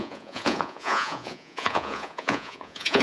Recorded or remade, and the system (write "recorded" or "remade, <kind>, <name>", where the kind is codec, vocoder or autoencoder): remade, vocoder, Vocos